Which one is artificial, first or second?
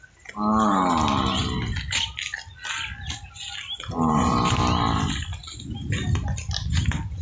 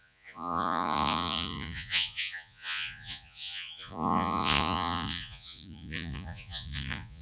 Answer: second